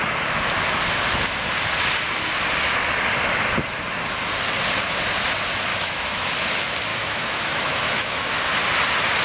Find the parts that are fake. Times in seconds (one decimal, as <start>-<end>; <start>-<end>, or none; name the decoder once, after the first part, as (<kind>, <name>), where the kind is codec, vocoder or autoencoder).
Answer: 5.7-6.3 (autoencoder, DAC-VAE); 6.9-8.2